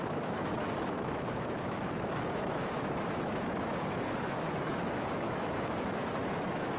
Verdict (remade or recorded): remade